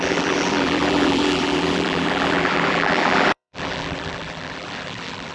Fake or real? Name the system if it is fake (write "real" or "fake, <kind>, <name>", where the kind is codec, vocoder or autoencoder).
fake, vocoder, BigVGAN v2